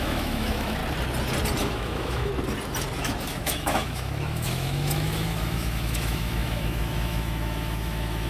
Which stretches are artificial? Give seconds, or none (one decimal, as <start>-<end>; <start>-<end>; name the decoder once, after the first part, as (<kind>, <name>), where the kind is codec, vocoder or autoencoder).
0.0-0.8 (autoencoder, DAC-VAE); 1.6-2.3; 3.0-8.3